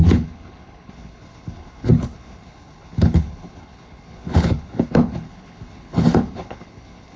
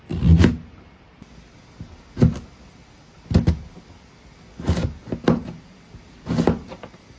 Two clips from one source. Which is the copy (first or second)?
first